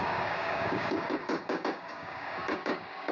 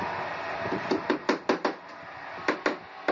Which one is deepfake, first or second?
first